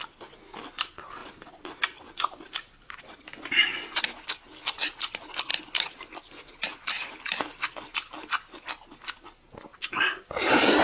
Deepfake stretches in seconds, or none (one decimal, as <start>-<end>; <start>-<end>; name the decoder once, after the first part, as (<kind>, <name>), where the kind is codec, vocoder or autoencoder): 1.2-3.0 (vocoder, BigVGAN v2); 9.7-10.8